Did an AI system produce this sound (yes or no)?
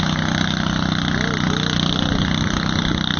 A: no